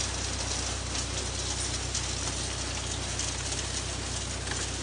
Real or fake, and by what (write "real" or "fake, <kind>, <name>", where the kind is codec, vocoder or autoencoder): real